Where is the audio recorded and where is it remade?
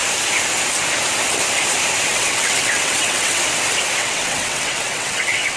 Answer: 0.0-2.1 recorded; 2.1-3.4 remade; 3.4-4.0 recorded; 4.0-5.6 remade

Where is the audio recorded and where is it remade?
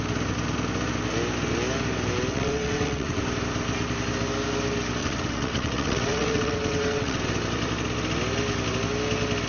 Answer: 0.0-2.3 recorded; 2.3-3.2 remade; 3.2-5.0 recorded; 5.0-7.2 remade; 7.2-9.5 recorded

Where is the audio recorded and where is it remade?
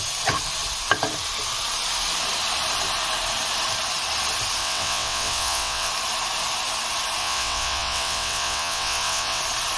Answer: 0.0-4.6 recorded; 4.6-5.9 remade; 5.9-7.2 recorded; 7.2-9.4 remade; 9.4-9.8 recorded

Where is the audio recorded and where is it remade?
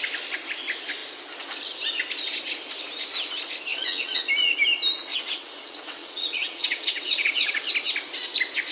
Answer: 0.0-3.7 recorded; 3.7-4.2 remade; 4.2-5.1 recorded; 5.1-7.6 remade; 7.6-8.7 recorded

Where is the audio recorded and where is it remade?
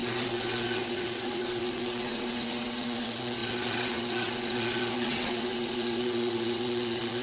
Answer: 0.0-7.2 remade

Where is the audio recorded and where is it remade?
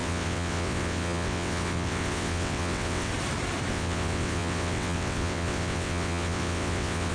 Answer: 0.0-3.1 remade; 3.1-3.7 recorded; 3.7-7.1 remade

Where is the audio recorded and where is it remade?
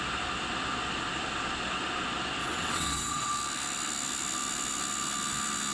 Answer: 0.0-2.4 recorded; 2.4-3.3 remade; 3.3-5.7 recorded